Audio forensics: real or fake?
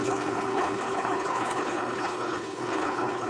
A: fake